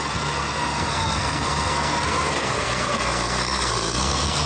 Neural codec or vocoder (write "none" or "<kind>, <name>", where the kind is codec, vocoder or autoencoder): codec, SNAC